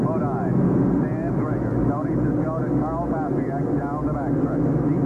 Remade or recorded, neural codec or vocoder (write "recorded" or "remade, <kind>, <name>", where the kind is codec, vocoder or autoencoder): recorded